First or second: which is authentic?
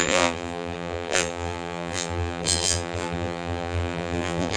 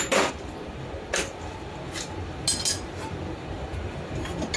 second